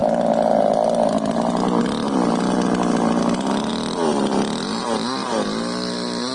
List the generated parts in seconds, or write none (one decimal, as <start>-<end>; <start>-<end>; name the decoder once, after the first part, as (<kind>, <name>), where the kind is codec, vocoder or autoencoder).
3.7-4.8 (vocoder, BigVGAN v2)